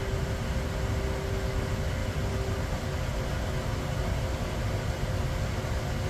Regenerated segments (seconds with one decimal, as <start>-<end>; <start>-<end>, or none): 2.0-3.0